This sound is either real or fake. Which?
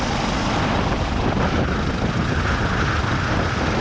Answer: real